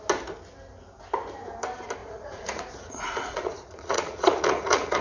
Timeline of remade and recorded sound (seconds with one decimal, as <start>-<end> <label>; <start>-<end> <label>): 0.0-2.0 recorded; 2.0-5.0 remade